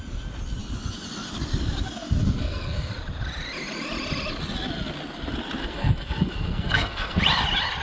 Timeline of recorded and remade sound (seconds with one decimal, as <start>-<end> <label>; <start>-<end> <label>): 0.0-2.2 recorded; 2.2-2.9 remade; 2.9-5.6 recorded; 5.6-7.2 remade; 7.2-7.8 recorded